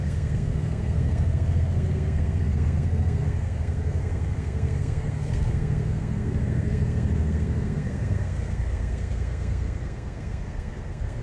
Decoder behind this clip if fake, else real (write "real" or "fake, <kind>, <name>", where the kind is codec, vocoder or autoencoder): fake, codec, SNAC